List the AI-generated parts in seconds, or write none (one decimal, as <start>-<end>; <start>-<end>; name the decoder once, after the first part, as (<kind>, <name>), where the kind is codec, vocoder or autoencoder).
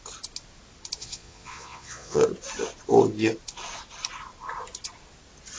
1.0-2.2 (vocoder, Vocos)